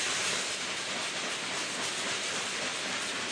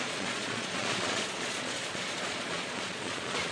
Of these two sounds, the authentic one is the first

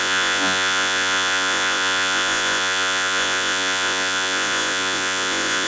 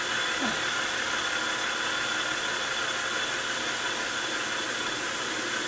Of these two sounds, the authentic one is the second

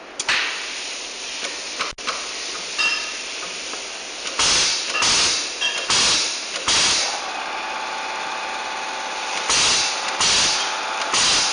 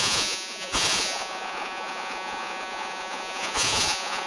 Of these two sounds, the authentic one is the first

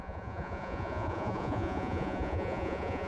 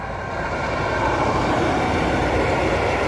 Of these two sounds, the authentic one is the second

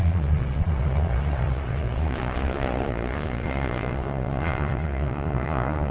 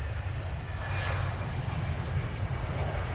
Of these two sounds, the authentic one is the second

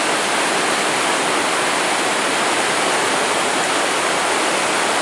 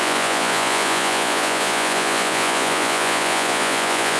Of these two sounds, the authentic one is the first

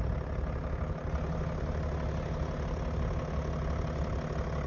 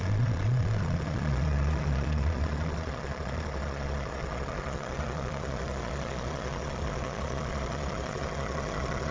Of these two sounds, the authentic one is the first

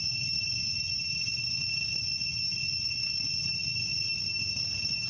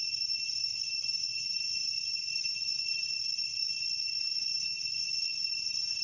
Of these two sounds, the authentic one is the first